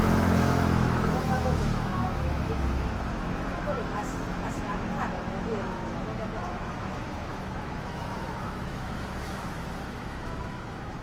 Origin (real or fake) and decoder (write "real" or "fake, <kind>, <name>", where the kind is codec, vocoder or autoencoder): fake, autoencoder, DAC-VAE